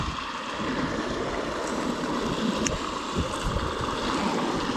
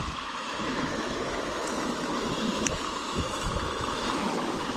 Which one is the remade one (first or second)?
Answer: second